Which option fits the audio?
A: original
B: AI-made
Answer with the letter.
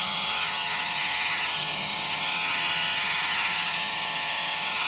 B